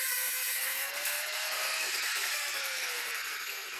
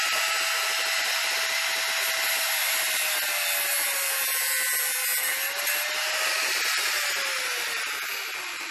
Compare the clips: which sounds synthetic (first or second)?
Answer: first